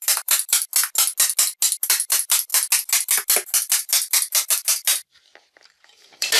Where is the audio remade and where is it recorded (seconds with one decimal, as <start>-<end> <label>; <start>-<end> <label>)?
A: 0.0-0.7 remade; 0.7-1.9 recorded; 1.9-2.5 remade; 2.5-3.7 recorded; 3.7-6.4 remade